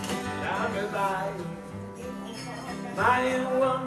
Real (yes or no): yes